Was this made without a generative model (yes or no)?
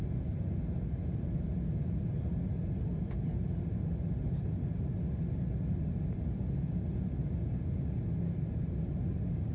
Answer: yes